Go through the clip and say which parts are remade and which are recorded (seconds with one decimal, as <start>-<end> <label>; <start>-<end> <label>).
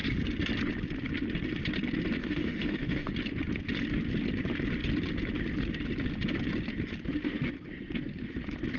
0.0-2.2 recorded; 2.2-3.1 remade; 3.1-8.8 recorded